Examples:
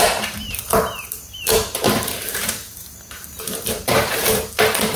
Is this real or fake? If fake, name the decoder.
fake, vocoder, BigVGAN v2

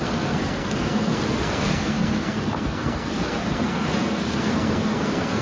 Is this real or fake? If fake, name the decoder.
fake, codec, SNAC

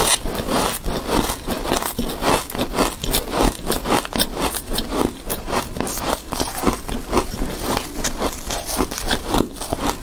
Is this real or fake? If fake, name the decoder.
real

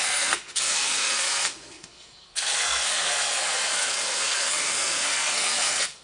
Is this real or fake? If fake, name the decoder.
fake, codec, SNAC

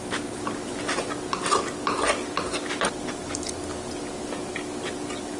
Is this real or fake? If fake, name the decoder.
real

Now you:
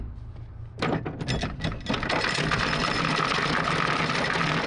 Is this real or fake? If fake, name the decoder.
real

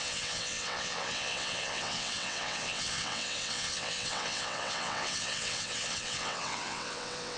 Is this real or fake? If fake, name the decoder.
fake, vocoder, WaveNeXt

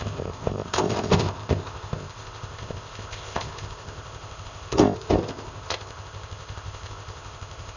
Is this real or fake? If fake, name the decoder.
fake, codec, ZipCodec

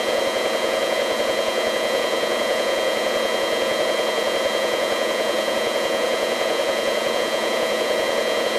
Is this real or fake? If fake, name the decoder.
fake, vocoder, Vocos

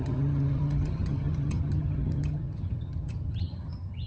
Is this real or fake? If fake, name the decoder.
fake, vocoder, HiFi-GAN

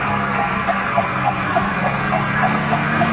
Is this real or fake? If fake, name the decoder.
fake, codec, SNAC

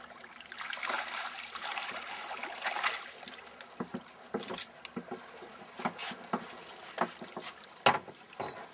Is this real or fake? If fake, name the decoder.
real